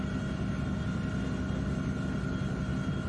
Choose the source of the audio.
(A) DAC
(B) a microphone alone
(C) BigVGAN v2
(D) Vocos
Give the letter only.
B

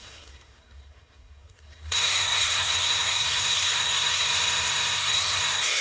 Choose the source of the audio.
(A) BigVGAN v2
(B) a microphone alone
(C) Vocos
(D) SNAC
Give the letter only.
D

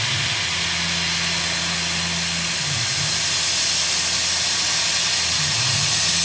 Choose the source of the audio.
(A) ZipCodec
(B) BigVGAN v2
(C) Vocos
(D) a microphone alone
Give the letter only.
D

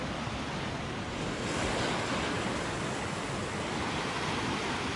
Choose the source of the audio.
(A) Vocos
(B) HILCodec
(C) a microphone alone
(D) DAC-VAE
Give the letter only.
C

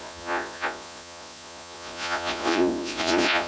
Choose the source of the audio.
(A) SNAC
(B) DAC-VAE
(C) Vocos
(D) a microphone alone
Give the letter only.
C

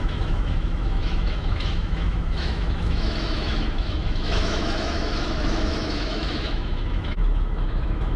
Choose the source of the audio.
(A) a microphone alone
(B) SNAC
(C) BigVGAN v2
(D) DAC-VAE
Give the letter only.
D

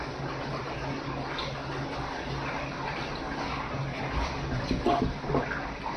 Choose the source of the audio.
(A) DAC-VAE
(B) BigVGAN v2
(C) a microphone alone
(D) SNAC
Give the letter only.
C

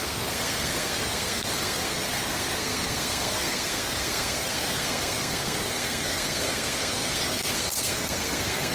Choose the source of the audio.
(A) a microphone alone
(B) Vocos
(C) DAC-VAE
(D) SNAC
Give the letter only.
D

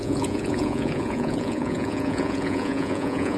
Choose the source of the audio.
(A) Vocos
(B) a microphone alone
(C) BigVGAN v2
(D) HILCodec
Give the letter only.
A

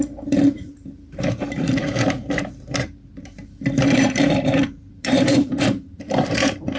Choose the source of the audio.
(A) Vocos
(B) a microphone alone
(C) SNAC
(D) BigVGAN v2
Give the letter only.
D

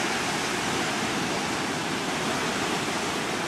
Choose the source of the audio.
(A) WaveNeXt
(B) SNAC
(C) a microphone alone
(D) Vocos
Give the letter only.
C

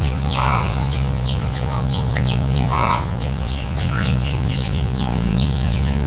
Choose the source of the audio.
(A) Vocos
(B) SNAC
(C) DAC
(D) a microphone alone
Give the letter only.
A